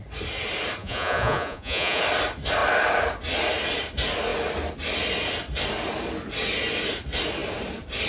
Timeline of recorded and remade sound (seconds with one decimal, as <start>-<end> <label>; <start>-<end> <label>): 0.0-0.8 recorded; 0.8-2.0 remade; 2.0-8.1 recorded